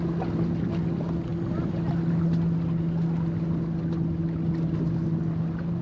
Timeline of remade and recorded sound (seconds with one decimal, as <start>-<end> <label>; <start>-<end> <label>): 0.0-5.8 recorded